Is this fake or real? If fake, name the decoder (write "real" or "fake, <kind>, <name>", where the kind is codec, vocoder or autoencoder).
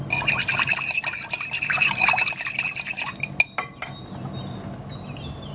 real